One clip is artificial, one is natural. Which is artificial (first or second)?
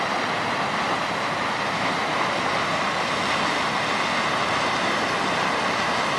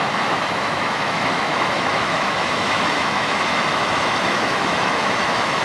second